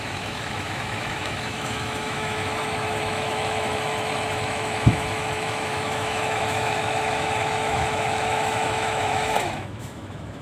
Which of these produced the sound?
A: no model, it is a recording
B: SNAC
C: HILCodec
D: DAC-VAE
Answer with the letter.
D